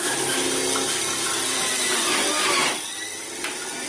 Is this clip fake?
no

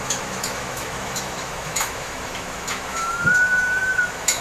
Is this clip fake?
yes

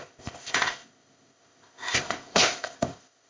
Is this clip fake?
yes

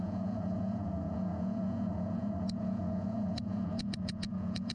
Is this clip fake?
yes